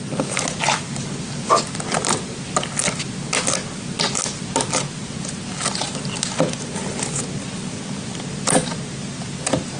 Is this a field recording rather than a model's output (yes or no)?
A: yes